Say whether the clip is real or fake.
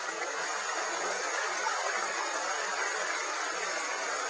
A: real